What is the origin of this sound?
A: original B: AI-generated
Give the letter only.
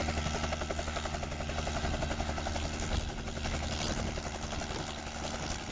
A